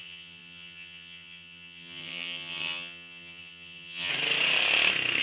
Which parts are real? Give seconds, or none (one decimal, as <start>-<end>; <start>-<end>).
4.1-5.2